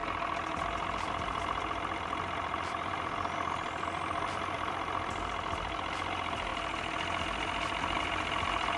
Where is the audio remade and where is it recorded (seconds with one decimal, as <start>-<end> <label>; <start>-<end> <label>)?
0.0-8.8 recorded